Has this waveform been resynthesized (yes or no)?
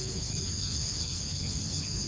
yes